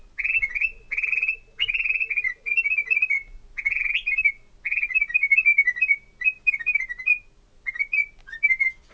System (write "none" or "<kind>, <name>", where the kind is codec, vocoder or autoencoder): none